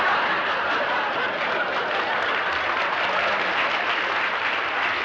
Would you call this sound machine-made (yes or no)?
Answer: no